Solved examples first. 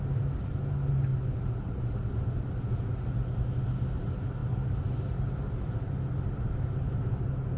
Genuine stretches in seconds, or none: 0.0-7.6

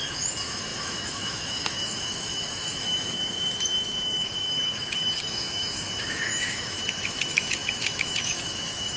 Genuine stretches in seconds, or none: none

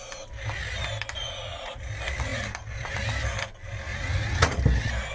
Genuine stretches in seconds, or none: 0.0-1.2; 1.8-3.9; 4.6-5.1

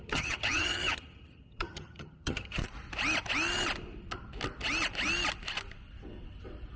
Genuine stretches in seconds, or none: 2.6-6.8

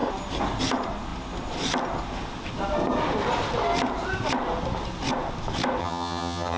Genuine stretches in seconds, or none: 0.0-5.8

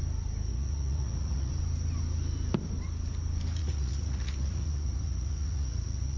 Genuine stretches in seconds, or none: 0.0-0.5; 1.5-3.6

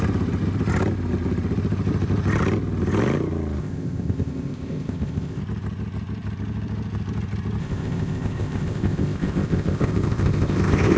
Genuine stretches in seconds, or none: 0.0-3.6; 5.4-7.6

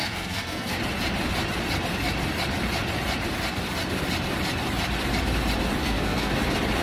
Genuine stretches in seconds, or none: 0.8-5.8; 6.3-6.8